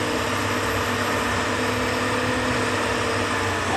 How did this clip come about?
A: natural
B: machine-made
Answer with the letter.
A